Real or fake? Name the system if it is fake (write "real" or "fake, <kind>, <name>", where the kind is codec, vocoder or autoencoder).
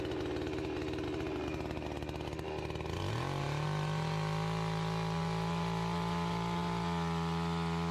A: real